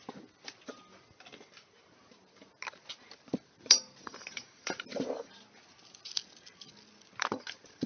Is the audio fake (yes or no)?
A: no